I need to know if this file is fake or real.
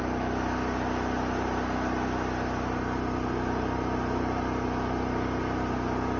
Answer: real